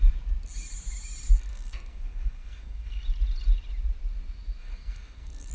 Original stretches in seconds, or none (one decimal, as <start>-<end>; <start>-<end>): 0.0-1.5; 3.0-4.6